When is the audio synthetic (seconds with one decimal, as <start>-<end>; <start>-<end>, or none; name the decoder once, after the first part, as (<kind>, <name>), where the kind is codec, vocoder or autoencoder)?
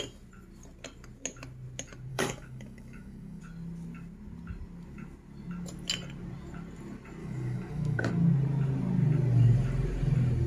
2.1-3.4 (codec, DAC); 7.2-8.1